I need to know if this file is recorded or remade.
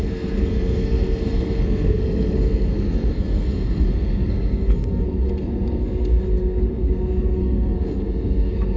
remade